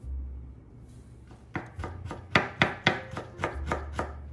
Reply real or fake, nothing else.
real